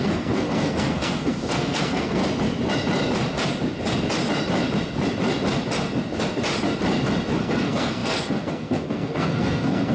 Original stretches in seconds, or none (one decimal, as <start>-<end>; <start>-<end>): 2.2-7.4